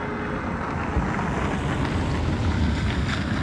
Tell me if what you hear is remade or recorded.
recorded